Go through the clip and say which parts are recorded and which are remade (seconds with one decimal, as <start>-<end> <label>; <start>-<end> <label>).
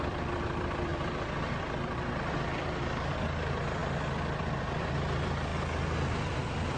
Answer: 0.0-5.5 remade; 5.5-6.2 recorded; 6.2-6.8 remade